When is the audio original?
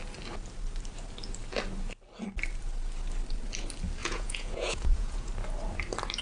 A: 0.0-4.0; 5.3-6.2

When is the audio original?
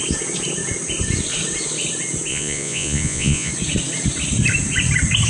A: 0.0-2.3; 3.5-5.3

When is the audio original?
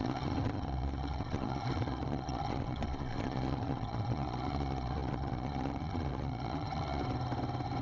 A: 7.0-7.8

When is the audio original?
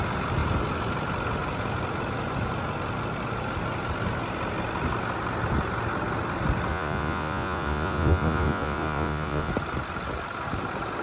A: 0.0-6.7; 9.5-11.0